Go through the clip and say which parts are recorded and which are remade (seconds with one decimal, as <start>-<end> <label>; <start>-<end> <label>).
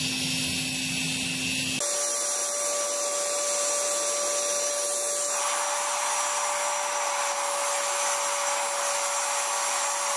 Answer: 0.0-10.2 recorded